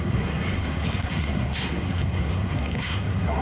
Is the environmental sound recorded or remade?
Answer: remade